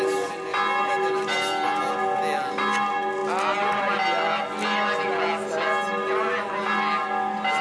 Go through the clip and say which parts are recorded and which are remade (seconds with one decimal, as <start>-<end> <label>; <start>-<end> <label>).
0.0-7.6 recorded